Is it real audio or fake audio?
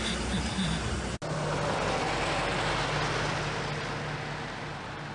real